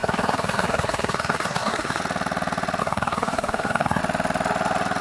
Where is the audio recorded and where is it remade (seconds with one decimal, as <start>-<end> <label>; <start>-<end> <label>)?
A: 0.0-2.0 remade; 2.0-2.8 recorded; 2.8-4.0 remade; 4.0-5.0 recorded